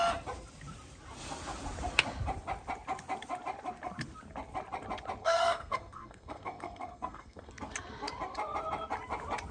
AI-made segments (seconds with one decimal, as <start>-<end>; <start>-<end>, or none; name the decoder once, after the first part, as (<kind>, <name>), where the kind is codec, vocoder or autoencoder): 5.2-7.5 (codec, SNAC)